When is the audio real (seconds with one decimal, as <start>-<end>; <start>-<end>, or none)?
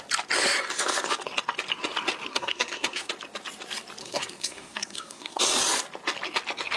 0.0-2.3; 3.1-4.0; 5.4-6.8